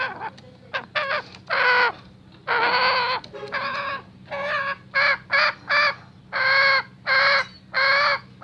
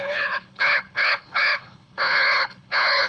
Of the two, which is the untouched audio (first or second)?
first